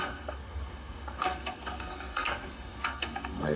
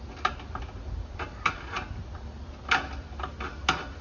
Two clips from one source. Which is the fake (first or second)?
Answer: first